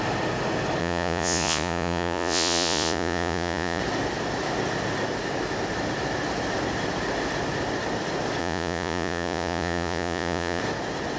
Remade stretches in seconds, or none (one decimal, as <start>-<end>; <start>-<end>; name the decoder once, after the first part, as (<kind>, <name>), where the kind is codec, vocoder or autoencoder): 0.8-3.8 (vocoder, Vocos); 8.4-10.6

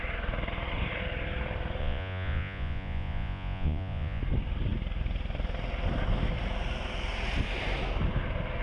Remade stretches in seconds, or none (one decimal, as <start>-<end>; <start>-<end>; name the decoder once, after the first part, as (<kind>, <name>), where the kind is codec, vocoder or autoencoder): 1.8-4.2 (vocoder, Vocos)

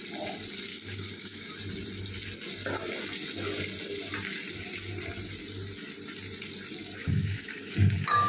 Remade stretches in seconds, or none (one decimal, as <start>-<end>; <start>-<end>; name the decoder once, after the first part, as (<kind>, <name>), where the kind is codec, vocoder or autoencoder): 0.7-1.5 (codec, DAC); 7.0-8.3

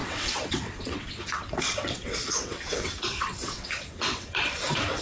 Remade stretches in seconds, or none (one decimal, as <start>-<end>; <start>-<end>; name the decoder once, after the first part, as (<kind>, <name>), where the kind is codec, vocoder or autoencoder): 0.0-5.0 (vocoder, WaveNeXt)

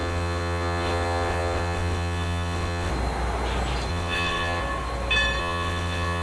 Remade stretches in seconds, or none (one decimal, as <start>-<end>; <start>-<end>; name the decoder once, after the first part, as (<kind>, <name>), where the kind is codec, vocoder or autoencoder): 0.0-2.9 (vocoder, WaveNeXt); 3.9-4.6; 5.4-6.2

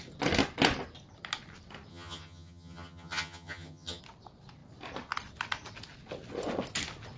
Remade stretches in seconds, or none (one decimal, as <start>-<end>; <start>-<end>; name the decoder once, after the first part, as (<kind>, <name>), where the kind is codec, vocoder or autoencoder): 1.9-4.0 (vocoder, HiFi-GAN)